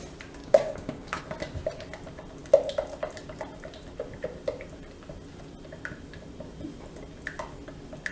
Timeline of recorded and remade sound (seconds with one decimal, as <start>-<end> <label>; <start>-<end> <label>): 0.0-0.4 recorded; 0.4-1.2 remade; 1.2-8.1 recorded